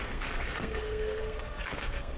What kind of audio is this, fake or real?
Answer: fake